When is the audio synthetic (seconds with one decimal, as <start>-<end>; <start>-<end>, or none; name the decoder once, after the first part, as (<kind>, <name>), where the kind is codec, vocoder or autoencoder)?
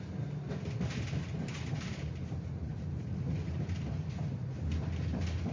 none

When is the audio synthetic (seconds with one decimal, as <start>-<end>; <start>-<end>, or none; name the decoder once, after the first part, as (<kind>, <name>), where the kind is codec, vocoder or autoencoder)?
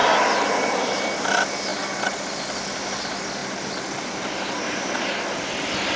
none